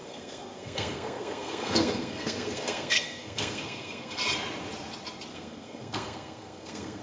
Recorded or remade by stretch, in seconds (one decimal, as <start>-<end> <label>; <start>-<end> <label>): 0.0-4.2 remade; 4.2-5.3 recorded; 5.3-7.0 remade